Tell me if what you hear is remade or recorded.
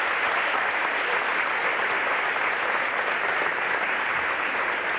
recorded